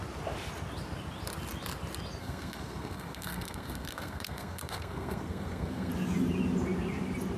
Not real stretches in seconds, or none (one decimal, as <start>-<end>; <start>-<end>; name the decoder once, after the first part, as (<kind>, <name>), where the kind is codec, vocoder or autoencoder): 2.2-5.9 (codec, SNAC)